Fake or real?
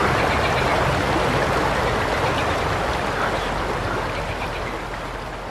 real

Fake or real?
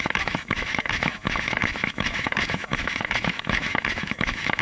fake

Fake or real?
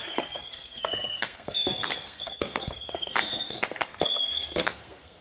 fake